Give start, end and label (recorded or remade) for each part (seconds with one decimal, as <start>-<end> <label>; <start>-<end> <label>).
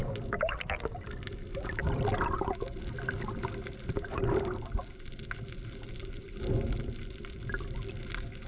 0.0-8.5 recorded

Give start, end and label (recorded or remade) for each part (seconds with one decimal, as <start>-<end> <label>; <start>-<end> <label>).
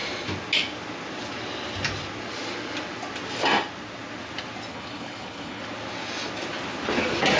0.0-4.7 recorded; 4.7-5.6 remade; 5.6-7.4 recorded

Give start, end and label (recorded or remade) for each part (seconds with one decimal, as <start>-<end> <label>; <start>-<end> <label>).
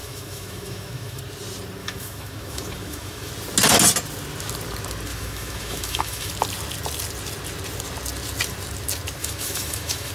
0.0-1.2 remade; 1.2-1.8 recorded; 1.8-3.3 remade; 3.3-5.1 recorded; 5.1-6.3 remade; 6.3-9.2 recorded; 9.2-10.1 remade